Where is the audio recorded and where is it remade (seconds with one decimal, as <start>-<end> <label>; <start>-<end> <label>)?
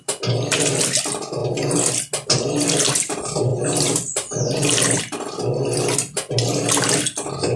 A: 0.0-7.6 recorded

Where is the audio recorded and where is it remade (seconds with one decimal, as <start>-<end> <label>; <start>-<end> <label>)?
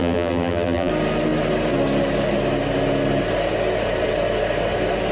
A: 0.0-0.9 remade; 0.9-5.1 recorded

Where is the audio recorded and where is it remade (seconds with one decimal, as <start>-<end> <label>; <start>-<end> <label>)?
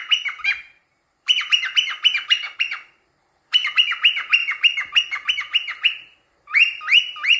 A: 0.0-0.8 recorded; 0.8-4.4 remade; 4.4-5.3 recorded; 5.3-7.4 remade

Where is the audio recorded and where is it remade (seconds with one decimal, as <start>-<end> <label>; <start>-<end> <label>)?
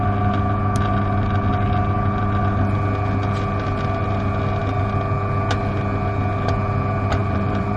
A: 0.0-7.2 recorded; 7.2-7.8 remade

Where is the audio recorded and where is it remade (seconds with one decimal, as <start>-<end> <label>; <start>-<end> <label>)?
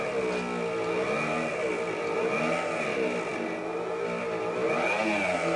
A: 0.0-5.6 recorded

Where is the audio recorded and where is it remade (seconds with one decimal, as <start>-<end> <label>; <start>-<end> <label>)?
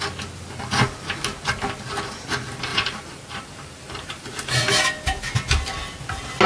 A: 0.0-2.7 recorded; 2.7-4.6 remade; 4.6-6.5 recorded